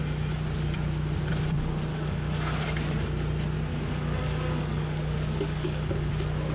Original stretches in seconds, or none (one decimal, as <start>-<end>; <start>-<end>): 0.0-1.9; 2.6-3.7; 6.1-6.5